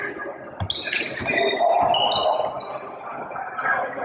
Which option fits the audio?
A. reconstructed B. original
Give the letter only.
B